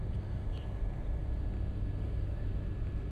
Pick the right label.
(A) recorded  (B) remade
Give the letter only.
A